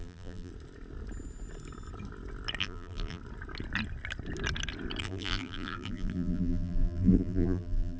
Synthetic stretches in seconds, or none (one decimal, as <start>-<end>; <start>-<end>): 0.0-0.5; 2.6-3.2; 5.0-8.0